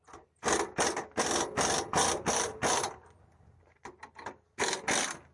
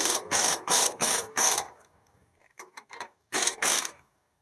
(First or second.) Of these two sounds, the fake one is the second